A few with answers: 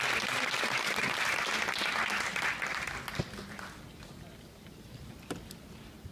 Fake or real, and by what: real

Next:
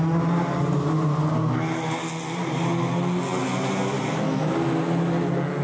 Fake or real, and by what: real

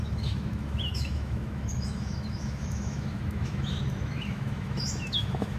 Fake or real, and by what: fake, autoencoder, DAC-VAE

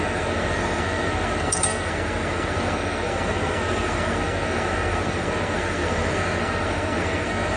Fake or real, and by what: fake, codec, SNAC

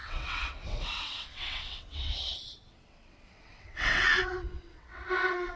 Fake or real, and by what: fake, vocoder, WaveNeXt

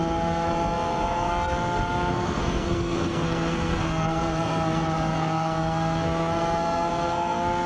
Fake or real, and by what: fake, codec, SNAC